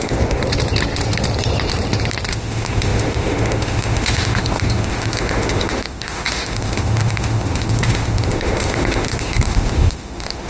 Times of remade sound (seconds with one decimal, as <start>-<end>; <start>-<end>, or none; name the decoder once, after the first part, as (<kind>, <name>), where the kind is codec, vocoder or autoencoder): 0.0-0.4 (autoencoder, DAC-VAE); 2.3-10.5